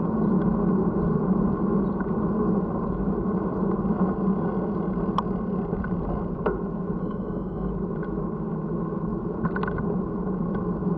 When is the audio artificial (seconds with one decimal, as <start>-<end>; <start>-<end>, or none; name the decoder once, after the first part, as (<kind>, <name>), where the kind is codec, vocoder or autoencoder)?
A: 7.0-7.7 (codec, SNAC)